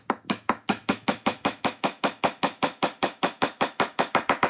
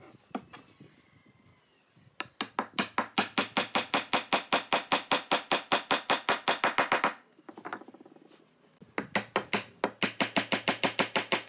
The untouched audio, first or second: second